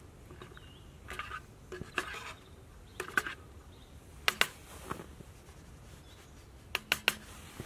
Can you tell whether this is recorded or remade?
recorded